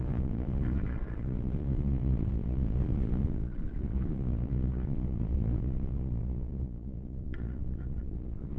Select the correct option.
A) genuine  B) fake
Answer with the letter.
B